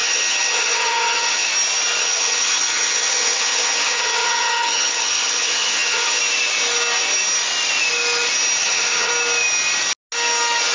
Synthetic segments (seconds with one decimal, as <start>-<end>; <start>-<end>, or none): 0.0-1.5; 2.0-6.2; 8.6-9.1